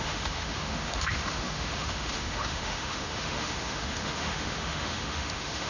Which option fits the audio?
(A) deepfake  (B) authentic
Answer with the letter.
A